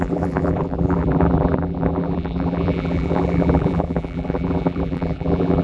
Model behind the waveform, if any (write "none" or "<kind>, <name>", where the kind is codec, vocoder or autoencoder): vocoder, BigVGAN v2